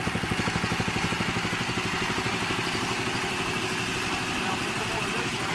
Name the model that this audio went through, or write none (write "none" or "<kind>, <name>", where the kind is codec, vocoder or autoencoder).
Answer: none